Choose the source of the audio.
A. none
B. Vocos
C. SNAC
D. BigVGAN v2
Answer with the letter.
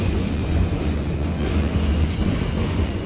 B